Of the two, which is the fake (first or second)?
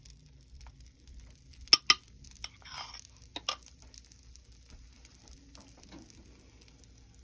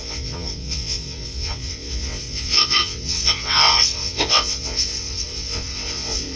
second